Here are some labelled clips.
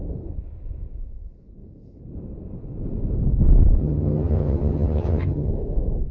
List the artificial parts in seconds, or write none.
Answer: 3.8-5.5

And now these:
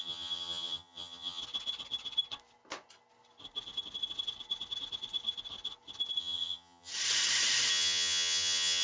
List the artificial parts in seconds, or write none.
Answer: 0.0-1.4; 6.2-6.9; 7.7-8.8

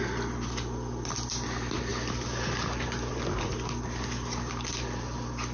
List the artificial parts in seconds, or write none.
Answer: none

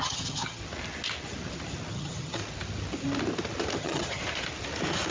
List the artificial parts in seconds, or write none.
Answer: 0.0-0.6; 1.9-2.4; 3.8-4.2

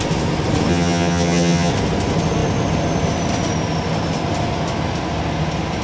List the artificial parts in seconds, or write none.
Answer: 0.7-1.7

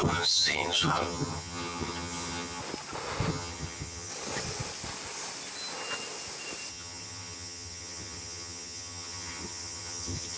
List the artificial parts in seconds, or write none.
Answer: 0.0-2.6; 3.3-4.1; 6.7-10.4

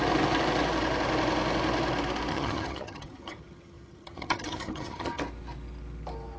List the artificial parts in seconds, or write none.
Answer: 2.3-5.2

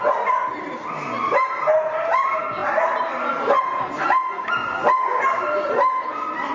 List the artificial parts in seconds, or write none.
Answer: none